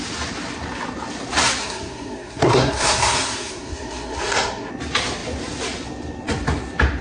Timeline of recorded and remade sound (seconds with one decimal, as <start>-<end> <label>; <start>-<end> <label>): 0.0-1.6 recorded; 1.6-4.7 remade; 4.7-7.0 recorded